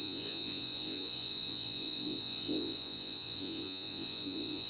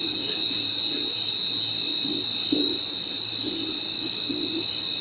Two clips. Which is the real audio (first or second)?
second